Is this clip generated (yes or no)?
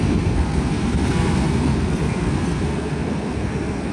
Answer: yes